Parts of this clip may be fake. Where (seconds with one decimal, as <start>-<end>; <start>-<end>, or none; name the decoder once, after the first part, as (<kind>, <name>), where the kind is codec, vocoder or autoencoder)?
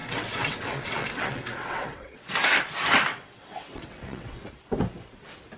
0.0-2.3 (vocoder, WaveNeXt); 3.1-4.5